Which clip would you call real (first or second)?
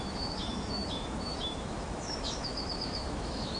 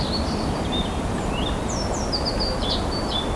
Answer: second